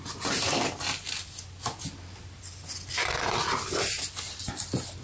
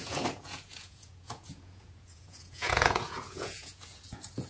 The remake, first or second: second